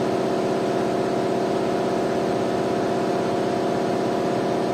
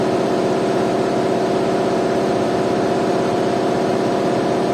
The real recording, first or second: first